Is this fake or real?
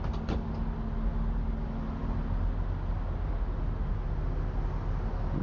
real